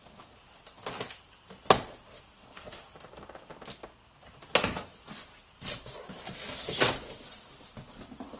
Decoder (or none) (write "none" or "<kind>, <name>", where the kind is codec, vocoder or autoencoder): none